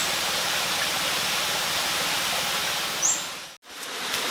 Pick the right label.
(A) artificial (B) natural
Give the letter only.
B